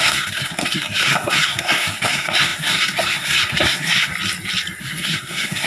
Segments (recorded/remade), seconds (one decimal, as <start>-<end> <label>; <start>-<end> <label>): 0.0-4.1 remade; 4.1-4.8 recorded; 4.8-5.7 remade